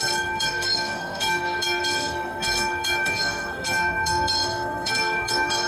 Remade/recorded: remade